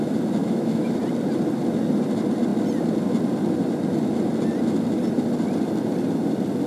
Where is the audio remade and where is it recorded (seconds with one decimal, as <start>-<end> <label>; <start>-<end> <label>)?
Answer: 0.0-0.4 recorded; 0.4-1.0 remade; 1.0-6.7 recorded